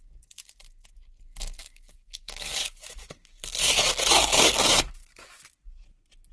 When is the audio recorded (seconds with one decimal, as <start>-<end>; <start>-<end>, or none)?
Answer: 0.0-1.6; 5.4-6.3